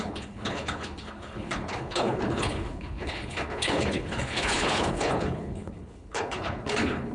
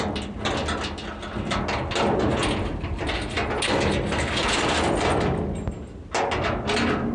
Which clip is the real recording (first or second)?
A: second